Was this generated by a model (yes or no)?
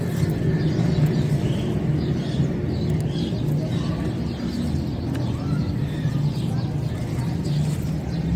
no